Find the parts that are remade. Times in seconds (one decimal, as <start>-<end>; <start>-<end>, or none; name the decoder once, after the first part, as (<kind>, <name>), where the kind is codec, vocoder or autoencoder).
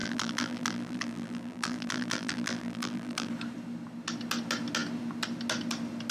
0.0-3.3 (vocoder, BigVGAN v2)